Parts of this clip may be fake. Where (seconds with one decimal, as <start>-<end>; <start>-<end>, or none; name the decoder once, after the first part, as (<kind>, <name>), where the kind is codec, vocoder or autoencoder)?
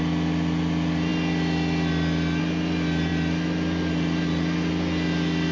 none